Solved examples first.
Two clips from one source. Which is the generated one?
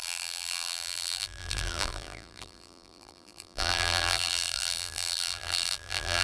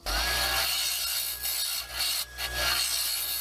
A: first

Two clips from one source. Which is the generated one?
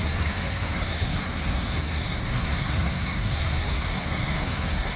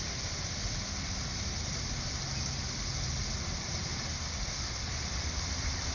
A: first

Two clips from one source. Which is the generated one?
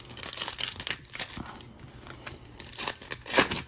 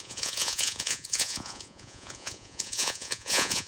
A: second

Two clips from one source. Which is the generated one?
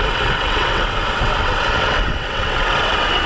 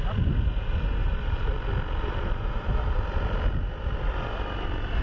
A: first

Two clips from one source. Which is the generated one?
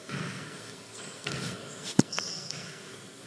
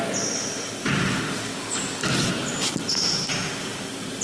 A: first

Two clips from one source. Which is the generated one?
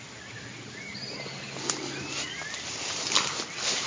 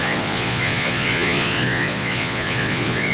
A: second